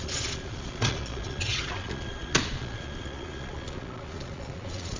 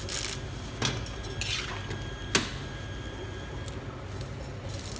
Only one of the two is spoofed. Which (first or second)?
first